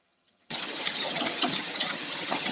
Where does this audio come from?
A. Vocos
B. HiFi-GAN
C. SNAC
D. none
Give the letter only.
B